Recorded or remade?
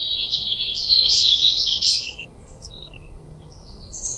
remade